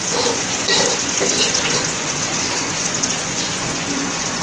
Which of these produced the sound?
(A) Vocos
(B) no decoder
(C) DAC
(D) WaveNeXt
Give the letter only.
A